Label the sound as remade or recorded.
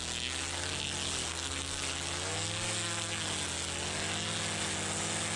recorded